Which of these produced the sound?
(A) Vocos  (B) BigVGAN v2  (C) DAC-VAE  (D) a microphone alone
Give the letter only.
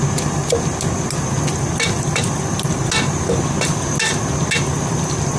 D